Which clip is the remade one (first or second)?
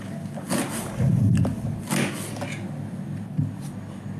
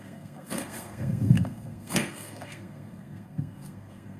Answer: second